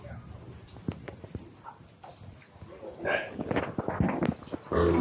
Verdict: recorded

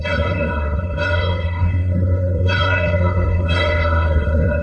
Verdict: remade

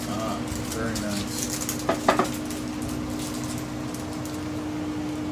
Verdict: recorded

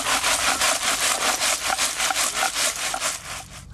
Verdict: recorded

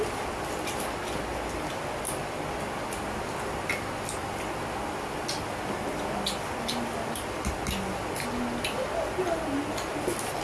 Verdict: recorded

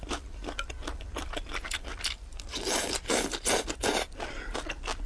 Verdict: recorded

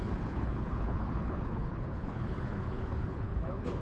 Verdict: remade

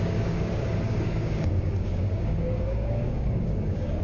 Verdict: remade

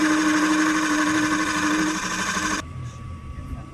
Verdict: remade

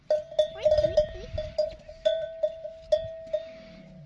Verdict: recorded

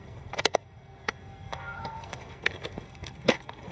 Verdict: remade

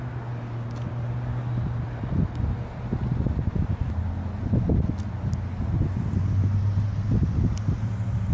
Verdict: recorded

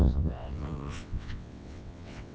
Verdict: remade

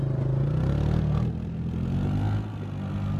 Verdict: recorded